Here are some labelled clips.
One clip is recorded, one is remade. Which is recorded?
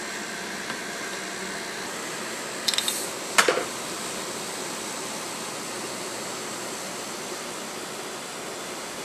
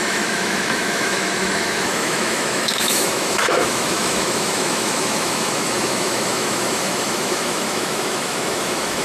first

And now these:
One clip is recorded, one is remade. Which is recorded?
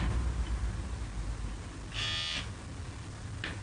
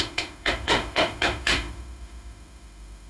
first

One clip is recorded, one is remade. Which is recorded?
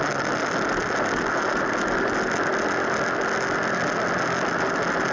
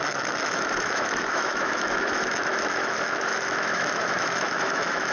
first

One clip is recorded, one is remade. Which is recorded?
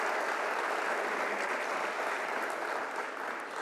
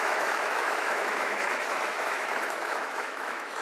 first